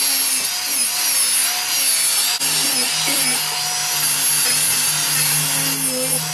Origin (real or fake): real